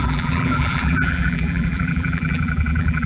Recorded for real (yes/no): no